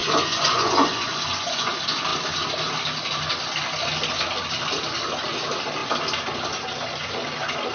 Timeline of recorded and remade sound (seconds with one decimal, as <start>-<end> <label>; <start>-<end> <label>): 0.0-1.7 remade; 1.7-7.7 recorded